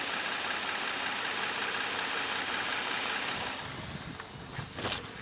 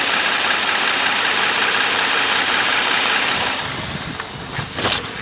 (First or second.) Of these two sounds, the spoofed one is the second